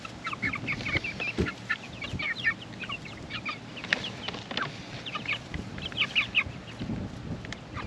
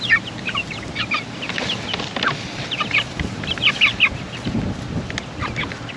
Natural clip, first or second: first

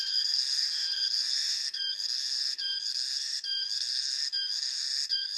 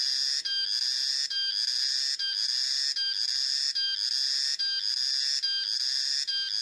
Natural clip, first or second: second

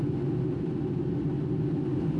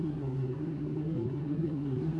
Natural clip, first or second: first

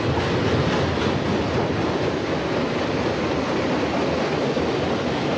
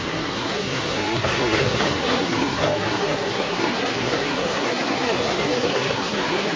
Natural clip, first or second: first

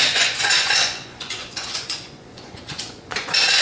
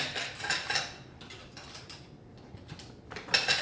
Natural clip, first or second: second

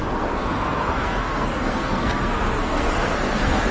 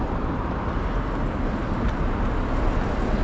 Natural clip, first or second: second